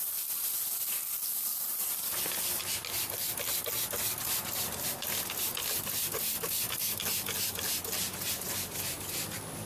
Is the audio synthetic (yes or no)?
no